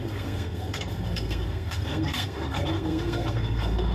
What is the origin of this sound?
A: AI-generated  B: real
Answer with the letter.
A